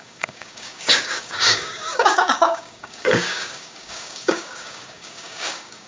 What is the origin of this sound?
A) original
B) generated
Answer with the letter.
B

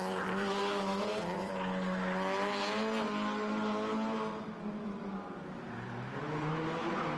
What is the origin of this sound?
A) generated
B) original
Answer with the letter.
B